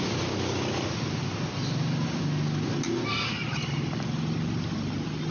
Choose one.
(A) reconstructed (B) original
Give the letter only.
B